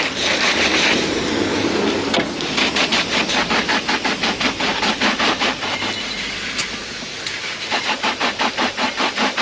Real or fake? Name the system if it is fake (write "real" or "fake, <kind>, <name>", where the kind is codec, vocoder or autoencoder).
fake, vocoder, BigVGAN v2